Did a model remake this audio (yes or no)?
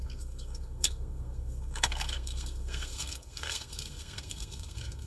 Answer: yes